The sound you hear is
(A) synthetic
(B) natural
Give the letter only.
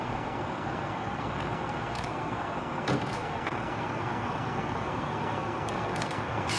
A